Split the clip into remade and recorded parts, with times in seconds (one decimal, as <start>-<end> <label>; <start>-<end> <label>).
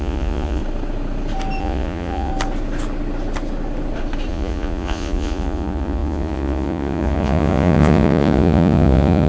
0.0-0.6 remade; 0.6-1.6 recorded; 1.6-2.3 remade; 2.3-4.3 recorded; 4.3-9.3 remade